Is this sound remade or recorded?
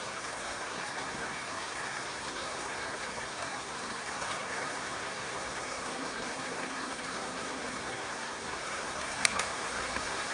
remade